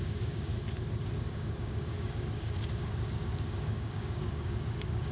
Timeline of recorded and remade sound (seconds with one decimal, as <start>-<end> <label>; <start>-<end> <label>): 0.0-0.5 remade; 0.5-1.2 recorded; 1.2-5.1 remade